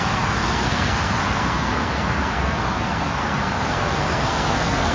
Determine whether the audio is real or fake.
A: fake